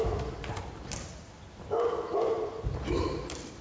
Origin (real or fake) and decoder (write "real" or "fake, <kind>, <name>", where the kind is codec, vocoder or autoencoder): real